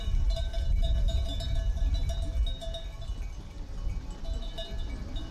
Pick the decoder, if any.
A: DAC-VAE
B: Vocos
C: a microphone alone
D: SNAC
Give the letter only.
C